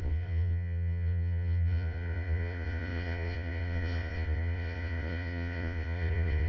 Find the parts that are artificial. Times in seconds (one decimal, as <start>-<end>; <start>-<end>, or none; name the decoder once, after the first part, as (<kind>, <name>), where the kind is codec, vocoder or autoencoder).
0.0-6.5 (vocoder, Vocos)